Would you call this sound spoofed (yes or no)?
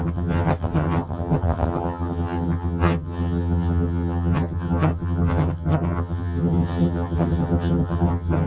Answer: yes